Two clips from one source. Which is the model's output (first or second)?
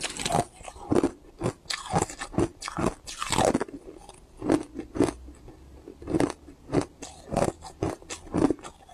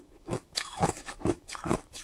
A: second